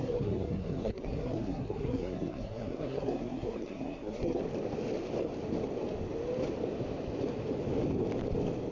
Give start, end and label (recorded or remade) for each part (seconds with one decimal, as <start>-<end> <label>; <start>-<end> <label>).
0.0-4.4 remade; 4.4-8.7 recorded